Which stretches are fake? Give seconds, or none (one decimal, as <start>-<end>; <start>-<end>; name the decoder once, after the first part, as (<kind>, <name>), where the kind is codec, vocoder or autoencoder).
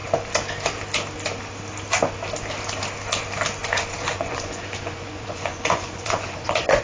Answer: 3.6-6.8 (vocoder, Vocos)